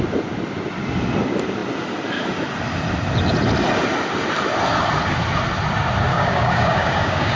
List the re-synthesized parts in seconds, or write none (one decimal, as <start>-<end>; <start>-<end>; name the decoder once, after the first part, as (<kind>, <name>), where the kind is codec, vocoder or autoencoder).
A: 6.1-7.4 (codec, DAC)